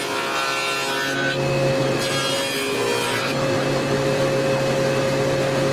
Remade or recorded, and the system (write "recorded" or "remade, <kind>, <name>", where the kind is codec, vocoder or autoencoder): recorded